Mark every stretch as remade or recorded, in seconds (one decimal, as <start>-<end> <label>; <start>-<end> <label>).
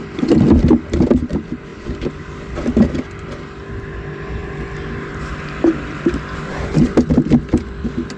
0.0-8.2 recorded